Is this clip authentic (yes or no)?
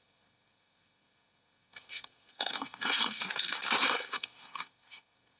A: no